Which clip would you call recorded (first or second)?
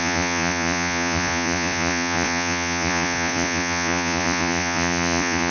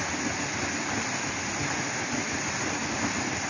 second